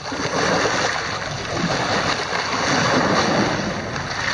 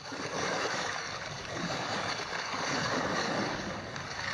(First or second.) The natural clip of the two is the first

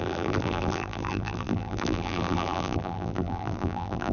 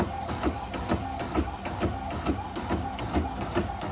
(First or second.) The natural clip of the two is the second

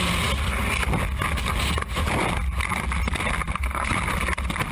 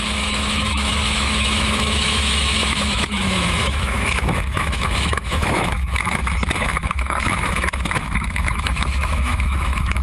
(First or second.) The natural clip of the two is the first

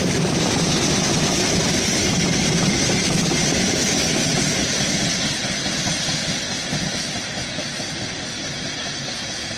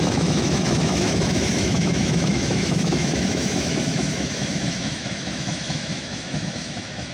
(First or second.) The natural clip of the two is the first